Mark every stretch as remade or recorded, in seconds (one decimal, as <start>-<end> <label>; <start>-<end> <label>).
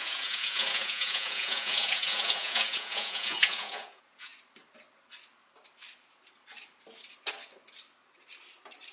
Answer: 0.0-4.3 remade; 4.3-8.9 recorded